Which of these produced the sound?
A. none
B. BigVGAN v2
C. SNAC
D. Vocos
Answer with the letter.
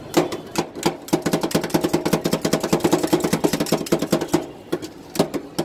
A